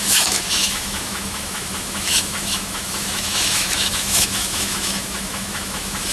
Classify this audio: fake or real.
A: fake